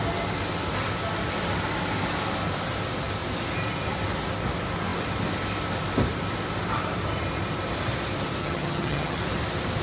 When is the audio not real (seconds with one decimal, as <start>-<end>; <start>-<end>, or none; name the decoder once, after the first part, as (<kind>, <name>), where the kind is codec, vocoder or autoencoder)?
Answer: 8.4-9.2 (vocoder, HiFi-GAN)